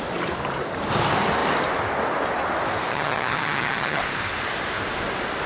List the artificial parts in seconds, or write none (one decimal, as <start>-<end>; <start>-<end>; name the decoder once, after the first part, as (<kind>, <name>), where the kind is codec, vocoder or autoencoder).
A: 2.9-4.0 (vocoder, HiFi-GAN)